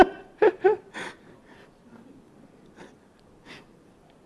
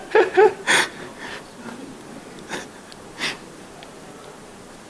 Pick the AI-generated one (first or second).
first